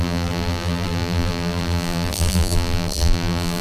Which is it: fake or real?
fake